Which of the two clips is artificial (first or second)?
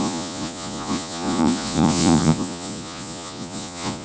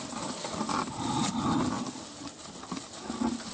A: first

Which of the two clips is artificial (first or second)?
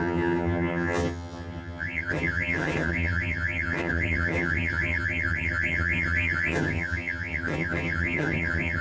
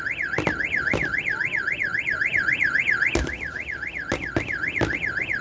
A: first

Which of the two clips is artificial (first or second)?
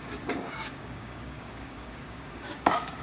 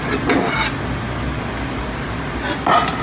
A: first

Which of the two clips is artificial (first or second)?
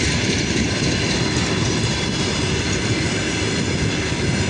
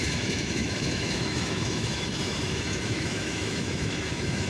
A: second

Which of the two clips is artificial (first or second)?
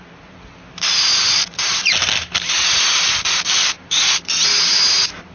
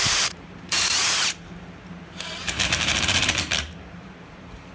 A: second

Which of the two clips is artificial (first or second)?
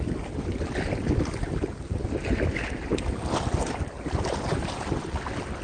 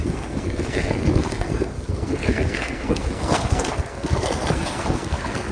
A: second